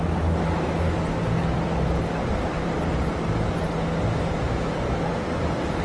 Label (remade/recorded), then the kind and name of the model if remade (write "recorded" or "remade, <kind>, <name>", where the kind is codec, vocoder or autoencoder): recorded